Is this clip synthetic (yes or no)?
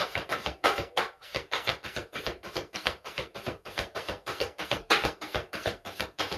yes